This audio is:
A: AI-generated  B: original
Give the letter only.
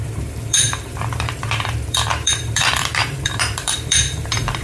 A